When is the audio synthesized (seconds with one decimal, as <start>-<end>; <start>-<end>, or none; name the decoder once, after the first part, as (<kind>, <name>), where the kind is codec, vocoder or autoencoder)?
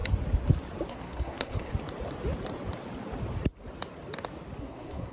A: 0.9-1.7 (codec, SNAC); 4.6-5.1